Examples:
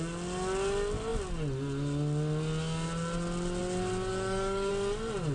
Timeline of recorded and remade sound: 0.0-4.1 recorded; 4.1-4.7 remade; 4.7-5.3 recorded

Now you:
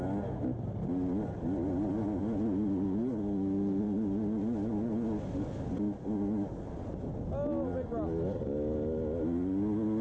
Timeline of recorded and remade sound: 0.0-10.0 recorded